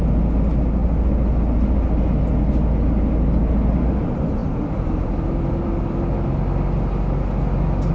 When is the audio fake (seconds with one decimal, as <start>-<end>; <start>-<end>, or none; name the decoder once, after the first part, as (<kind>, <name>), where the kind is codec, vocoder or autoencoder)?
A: 4.4-6.1 (vocoder, BigVGAN v2)